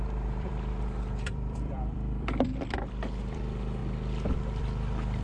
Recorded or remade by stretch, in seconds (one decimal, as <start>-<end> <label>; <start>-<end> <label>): 0.0-3.8 remade; 3.8-4.6 recorded; 4.6-5.2 remade